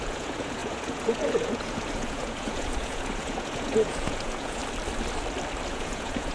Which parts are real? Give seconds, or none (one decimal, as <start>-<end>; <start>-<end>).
4.6-5.7